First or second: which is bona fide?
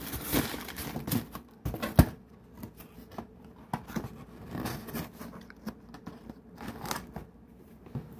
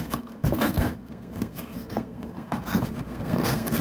first